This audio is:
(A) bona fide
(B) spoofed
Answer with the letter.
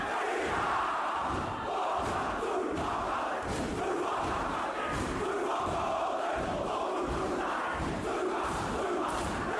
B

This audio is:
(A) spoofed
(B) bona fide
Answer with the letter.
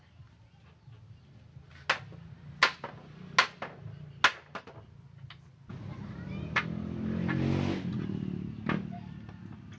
B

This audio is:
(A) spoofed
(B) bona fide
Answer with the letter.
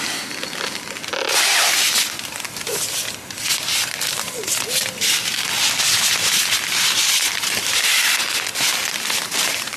B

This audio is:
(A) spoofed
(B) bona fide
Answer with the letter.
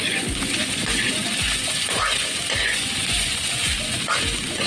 A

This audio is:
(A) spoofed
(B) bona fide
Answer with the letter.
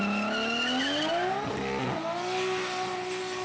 B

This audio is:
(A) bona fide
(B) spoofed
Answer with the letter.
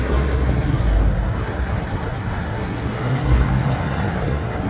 B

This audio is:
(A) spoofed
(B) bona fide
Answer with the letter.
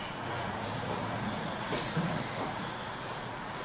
A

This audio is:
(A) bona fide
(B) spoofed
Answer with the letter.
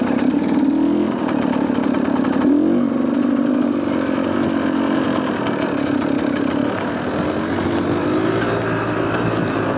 A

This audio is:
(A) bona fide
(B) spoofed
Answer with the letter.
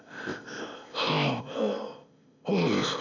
B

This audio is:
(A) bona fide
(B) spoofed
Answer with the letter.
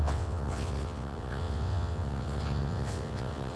B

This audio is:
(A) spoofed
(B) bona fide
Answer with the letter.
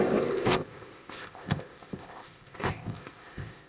A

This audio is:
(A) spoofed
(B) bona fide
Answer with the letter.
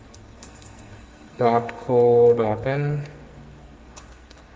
A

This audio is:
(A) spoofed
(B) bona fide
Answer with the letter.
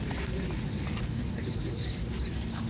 B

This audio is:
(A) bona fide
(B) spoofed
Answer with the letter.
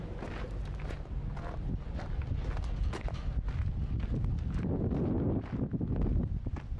A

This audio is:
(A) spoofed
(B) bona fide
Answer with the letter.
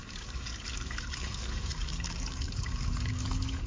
A